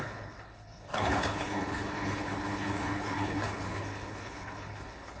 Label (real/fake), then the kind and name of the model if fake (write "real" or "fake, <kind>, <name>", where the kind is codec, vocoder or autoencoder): fake, codec, HILCodec